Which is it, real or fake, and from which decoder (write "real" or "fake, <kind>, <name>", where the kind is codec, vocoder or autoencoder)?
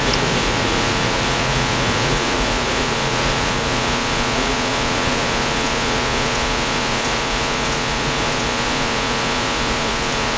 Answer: fake, vocoder, Vocos